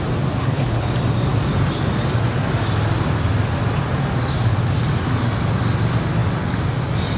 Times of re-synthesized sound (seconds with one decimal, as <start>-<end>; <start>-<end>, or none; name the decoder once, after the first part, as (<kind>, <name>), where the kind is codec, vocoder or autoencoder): 0.4-0.9 (codec, HILCodec)